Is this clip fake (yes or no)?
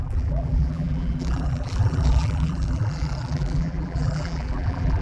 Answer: yes